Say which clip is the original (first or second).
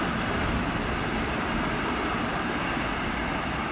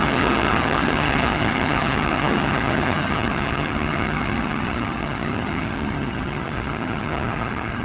first